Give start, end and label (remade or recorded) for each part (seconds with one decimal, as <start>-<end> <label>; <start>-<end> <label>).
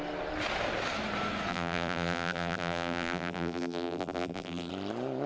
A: 0.0-1.5 recorded; 1.5-4.7 remade; 4.7-5.3 recorded